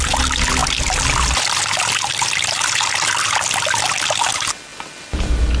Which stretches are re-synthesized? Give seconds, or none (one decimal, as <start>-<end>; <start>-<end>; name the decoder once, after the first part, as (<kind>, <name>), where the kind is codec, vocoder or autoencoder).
none